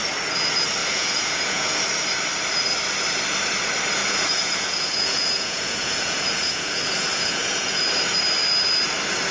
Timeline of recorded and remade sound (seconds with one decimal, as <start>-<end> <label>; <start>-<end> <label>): 0.0-0.8 recorded; 0.8-1.8 remade; 1.8-4.0 recorded; 4.0-7.8 remade; 7.8-9.3 recorded